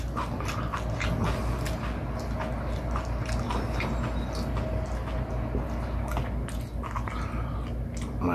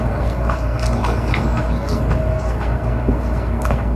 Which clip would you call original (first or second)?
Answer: first